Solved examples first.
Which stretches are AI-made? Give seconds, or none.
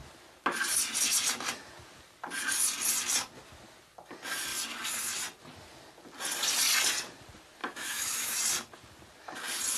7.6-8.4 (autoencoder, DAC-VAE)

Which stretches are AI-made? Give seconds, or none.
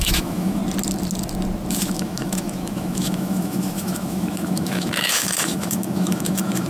0.0-0.6 (autoencoder, DAC-VAE); 1.7-6.7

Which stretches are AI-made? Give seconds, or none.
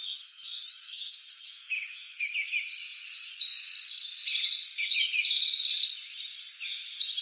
0.0-2.3 (autoencoder, DAC-VAE)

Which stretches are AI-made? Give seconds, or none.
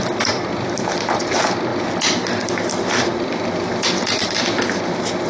none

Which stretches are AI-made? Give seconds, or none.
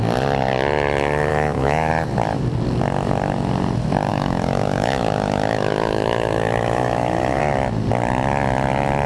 1.3-1.9 (autoencoder, DAC-VAE); 4.1-7.4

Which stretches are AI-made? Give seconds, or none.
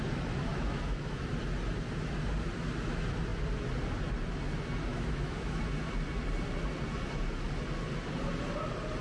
0.5-1.3 (autoencoder, DAC-VAE); 4.9-5.6